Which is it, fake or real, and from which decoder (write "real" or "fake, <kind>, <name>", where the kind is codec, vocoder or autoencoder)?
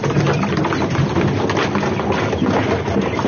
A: real